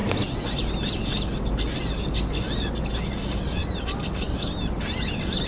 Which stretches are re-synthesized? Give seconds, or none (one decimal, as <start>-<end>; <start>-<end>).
none